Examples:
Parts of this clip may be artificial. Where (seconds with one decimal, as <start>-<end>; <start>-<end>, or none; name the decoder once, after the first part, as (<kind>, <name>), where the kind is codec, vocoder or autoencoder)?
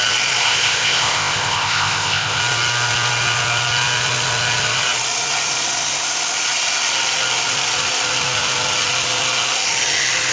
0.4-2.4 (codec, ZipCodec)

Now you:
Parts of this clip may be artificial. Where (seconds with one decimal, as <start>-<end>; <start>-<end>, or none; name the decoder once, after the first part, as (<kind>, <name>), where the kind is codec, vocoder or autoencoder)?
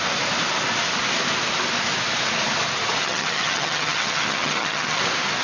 3.0-5.0 (vocoder, HiFi-GAN)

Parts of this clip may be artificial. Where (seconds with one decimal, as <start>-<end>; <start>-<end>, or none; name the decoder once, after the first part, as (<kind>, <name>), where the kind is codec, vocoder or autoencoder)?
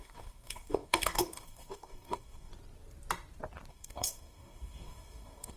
0.0-2.5 (codec, DAC); 3.7-5.6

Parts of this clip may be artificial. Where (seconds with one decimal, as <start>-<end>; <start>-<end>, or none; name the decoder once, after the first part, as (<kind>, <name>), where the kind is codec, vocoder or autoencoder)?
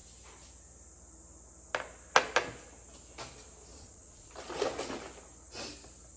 3.7-4.3 (vocoder, Vocos)